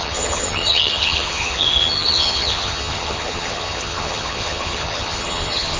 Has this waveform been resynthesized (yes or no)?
yes